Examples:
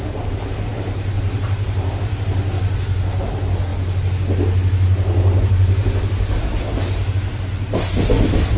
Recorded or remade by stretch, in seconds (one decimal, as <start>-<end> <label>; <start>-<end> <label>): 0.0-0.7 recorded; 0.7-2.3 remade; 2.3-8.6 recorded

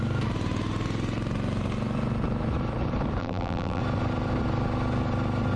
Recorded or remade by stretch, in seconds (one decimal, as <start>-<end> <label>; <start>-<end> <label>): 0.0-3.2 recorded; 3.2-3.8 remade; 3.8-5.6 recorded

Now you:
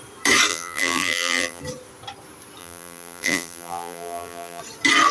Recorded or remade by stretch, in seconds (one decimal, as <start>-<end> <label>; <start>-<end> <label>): 0.0-0.5 recorded; 0.5-1.6 remade; 1.6-2.6 recorded; 2.6-4.6 remade; 4.6-5.1 recorded